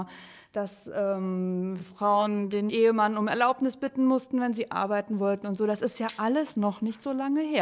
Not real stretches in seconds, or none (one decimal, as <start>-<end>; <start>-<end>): 1.8-2.7